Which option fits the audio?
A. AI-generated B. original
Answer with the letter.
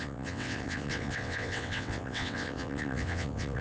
A